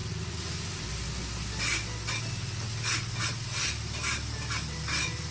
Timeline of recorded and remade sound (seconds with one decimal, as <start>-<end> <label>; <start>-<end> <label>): 0.0-5.3 recorded